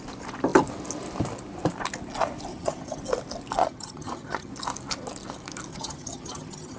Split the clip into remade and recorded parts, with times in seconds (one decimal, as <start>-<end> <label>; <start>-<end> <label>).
0.0-2.5 recorded; 2.5-3.0 remade; 3.0-3.6 recorded; 3.6-4.5 remade; 4.5-5.7 recorded; 5.7-6.8 remade